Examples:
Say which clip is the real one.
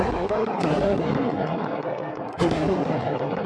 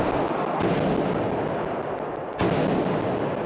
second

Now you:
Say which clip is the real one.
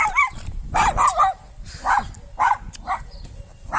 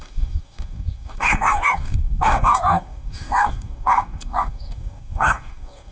first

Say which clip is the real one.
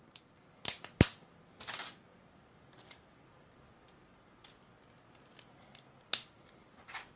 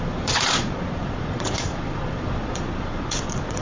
first